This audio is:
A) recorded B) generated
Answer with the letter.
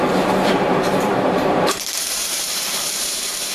B